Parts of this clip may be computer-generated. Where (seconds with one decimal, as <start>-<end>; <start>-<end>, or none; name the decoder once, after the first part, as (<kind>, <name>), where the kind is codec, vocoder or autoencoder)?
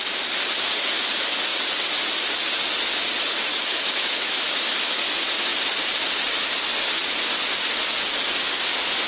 3.5-5.0 (autoencoder, DAC-VAE)